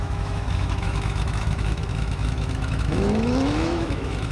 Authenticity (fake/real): fake